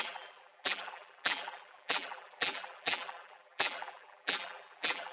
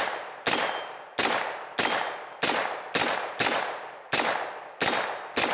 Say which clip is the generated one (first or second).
first